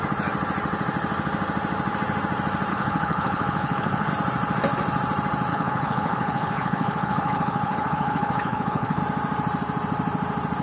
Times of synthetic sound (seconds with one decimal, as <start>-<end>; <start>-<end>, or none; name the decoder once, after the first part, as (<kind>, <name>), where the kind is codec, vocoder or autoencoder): 2.7-4.1 (codec, HILCodec); 5.5-9.0

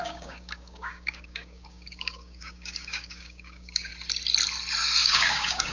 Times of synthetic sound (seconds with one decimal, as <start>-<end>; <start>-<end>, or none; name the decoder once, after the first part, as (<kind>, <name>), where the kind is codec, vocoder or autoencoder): 0.0-3.9 (codec, DAC); 5.0-5.7